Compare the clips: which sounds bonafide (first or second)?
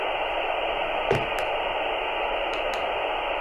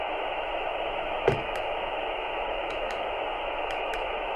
first